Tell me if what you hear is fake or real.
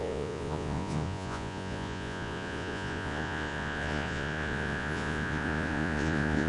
fake